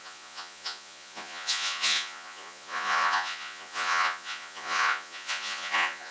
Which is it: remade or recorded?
remade